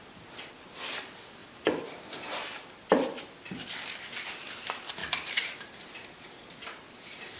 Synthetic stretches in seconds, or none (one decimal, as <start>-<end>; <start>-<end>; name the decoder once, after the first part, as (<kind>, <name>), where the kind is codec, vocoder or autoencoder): none